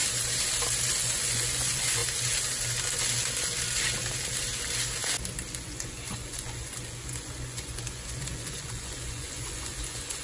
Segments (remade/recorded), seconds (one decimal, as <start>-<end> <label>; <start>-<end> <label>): 0.0-1.0 recorded; 1.0-2.0 remade; 2.0-5.5 recorded; 5.5-10.2 remade